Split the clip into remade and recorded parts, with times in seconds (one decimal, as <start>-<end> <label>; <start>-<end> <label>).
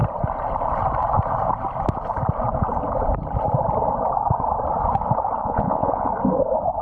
0.0-5.4 recorded; 5.4-6.1 remade; 6.1-6.8 recorded